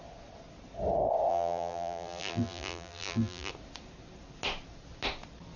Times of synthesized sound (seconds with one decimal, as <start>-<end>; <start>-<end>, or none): 1.3-3.5